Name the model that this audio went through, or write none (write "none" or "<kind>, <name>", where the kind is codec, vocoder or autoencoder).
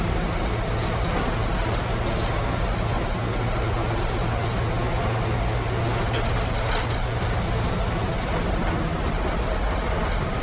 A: none